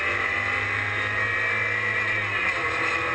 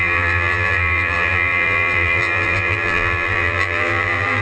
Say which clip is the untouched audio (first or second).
first